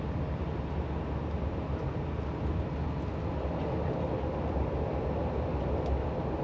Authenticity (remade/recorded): recorded